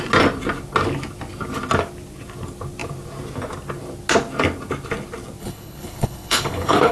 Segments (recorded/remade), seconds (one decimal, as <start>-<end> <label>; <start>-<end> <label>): 0.0-5.4 recorded; 5.4-6.9 remade